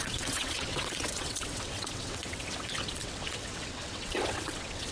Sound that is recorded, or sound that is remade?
remade